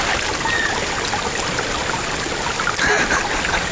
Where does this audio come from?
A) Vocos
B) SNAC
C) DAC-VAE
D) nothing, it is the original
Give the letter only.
D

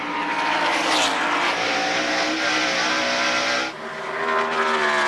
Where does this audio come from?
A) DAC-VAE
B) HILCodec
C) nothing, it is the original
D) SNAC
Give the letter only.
C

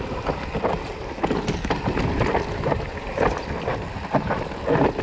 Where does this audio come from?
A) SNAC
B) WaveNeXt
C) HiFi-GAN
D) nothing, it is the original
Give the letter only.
D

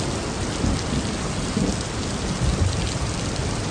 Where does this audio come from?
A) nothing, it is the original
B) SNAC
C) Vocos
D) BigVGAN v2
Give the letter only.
A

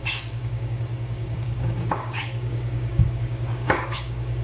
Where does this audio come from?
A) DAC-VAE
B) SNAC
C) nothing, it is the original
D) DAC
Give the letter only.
D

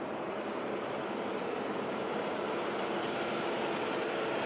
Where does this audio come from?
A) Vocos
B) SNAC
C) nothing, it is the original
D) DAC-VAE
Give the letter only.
C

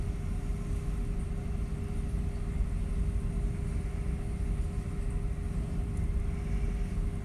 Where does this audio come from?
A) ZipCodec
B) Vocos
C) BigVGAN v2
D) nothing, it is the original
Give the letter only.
D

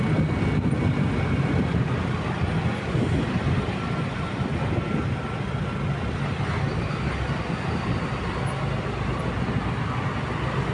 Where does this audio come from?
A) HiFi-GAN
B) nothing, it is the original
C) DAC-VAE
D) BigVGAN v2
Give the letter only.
B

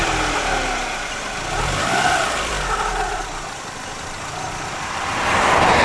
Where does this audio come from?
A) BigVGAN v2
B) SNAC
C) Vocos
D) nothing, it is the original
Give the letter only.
A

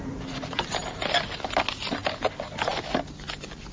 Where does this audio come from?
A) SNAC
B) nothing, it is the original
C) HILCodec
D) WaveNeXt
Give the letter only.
B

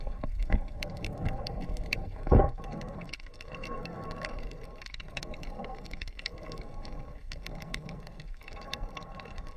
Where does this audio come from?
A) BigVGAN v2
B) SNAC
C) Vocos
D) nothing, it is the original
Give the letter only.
B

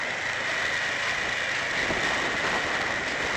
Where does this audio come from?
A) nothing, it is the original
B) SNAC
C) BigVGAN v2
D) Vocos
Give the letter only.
A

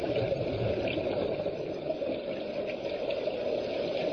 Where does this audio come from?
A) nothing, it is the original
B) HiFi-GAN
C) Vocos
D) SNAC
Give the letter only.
A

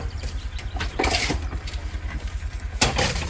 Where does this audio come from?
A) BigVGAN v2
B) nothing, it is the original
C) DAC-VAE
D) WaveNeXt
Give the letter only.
A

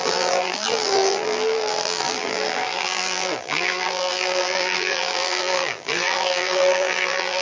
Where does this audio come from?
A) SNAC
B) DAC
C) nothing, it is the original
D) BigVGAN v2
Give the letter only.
D